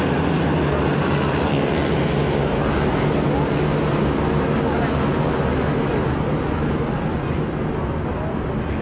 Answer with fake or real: real